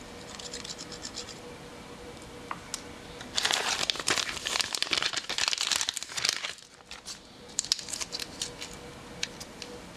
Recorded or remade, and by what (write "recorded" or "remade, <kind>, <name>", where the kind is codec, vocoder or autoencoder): recorded